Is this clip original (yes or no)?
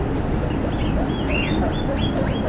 yes